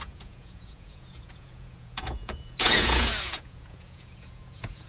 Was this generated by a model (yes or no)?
yes